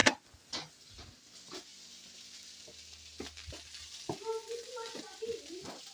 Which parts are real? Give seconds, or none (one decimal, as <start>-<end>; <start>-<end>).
0.0-5.9